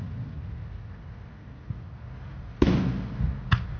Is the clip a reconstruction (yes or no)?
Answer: no